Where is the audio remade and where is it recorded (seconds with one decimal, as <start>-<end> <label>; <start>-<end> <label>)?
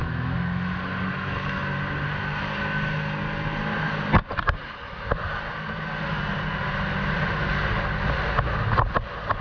0.0-9.4 recorded